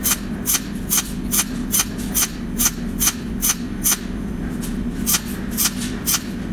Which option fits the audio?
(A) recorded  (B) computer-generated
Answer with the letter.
A